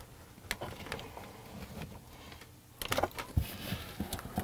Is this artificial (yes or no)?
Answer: no